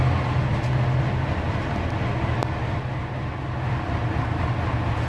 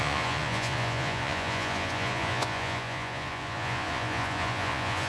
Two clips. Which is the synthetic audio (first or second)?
second